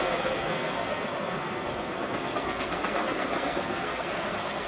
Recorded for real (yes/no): no